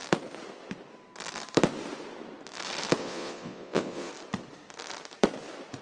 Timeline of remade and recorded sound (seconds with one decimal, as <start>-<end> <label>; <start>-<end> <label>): 0.0-3.0 recorded; 3.0-4.1 remade; 4.1-5.8 recorded